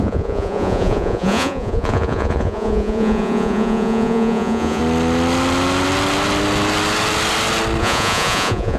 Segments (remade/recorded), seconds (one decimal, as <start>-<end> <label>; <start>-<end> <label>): 0.0-4.8 remade; 4.8-7.8 recorded; 7.8-8.8 remade